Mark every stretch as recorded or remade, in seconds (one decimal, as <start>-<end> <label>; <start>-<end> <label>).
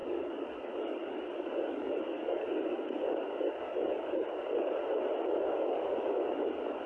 0.0-4.8 remade; 4.8-5.3 recorded; 5.3-6.9 remade